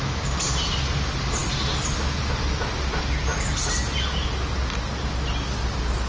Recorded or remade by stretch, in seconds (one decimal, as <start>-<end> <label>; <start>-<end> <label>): 0.0-6.1 recorded